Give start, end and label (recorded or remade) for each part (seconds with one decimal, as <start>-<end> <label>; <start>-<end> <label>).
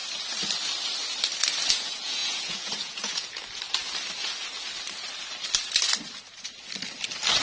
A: 0.0-1.7 recorded; 1.7-3.4 remade; 3.4-7.4 recorded